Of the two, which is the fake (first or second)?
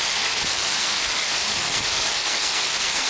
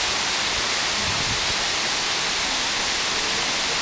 first